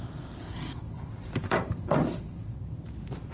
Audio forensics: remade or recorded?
remade